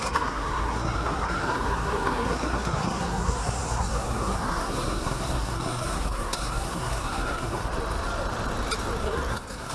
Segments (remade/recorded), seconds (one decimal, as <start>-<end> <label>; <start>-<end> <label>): 0.0-7.7 remade; 7.7-9.0 recorded; 9.0-9.7 remade